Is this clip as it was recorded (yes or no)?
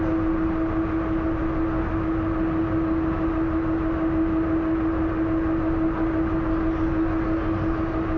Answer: yes